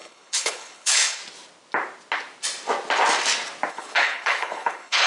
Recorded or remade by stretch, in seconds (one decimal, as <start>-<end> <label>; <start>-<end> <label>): 0.0-1.2 remade; 1.2-3.7 recorded; 3.7-5.1 remade